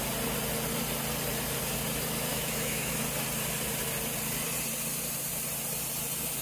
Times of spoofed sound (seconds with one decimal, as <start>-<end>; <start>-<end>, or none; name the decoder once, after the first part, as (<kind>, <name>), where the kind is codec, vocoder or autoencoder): 2.3-3.0 (autoencoder, DAC-VAE)